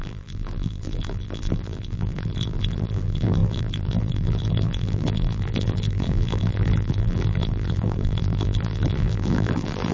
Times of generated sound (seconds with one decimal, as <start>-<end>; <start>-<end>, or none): 0.0-9.9